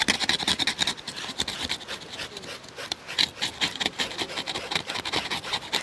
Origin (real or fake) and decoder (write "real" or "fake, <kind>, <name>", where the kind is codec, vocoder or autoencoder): real